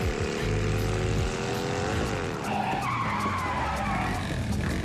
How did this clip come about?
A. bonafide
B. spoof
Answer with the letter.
A